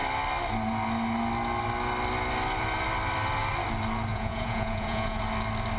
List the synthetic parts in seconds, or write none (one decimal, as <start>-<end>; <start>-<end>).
4.1-5.2